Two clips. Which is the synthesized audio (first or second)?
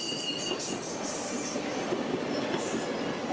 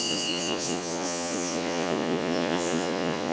second